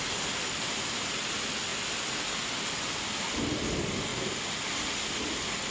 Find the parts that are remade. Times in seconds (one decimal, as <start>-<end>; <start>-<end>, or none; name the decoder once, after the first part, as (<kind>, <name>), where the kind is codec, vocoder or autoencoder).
none